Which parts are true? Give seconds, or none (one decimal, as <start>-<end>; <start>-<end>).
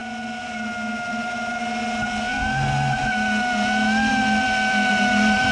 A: 0.0-1.1; 1.6-4.9